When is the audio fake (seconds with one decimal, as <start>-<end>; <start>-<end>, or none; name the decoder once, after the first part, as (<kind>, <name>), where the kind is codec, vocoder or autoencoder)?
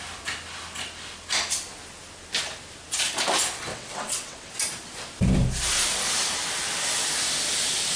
3.7-4.5 (vocoder, WaveNeXt)